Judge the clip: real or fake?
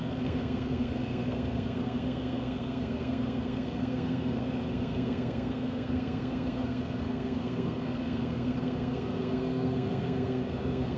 fake